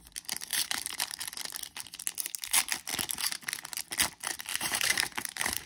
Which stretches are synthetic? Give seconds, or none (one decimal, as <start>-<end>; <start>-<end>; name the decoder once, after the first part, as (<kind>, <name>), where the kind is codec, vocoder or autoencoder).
0.5-1.2 (vocoder, BigVGAN v2); 4.5-5.7